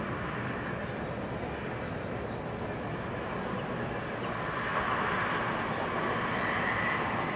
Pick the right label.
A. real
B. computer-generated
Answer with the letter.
A